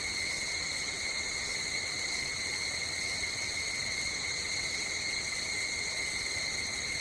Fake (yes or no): yes